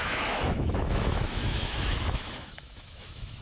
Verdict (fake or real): fake